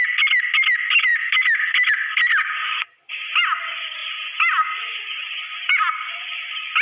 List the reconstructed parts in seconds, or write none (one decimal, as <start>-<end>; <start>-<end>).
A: none